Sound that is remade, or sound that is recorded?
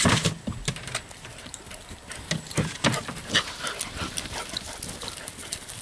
recorded